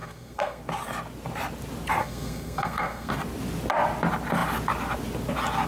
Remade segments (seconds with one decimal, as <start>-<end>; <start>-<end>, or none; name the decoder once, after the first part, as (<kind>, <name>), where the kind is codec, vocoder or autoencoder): 0.0-0.6 (codec, SNAC); 2.0-3.1

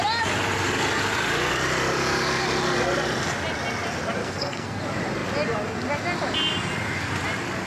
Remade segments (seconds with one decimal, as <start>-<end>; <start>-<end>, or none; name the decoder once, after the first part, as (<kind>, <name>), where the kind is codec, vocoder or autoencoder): 4.2-4.8 (codec, SNAC)

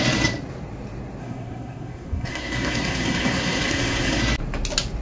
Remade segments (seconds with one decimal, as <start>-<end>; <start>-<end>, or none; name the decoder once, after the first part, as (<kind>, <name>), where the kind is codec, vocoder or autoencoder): 1.2-4.2 (codec, SNAC)

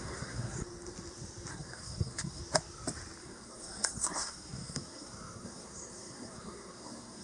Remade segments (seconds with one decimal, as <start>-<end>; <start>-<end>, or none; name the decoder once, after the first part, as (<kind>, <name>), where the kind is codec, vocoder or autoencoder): 0.0-0.6 (codec, SNAC); 1.5-2.4; 3.2-7.2